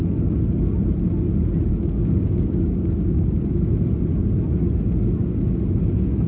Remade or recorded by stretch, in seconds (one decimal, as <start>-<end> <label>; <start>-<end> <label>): 0.0-1.7 recorded; 1.7-3.5 remade; 3.5-6.3 recorded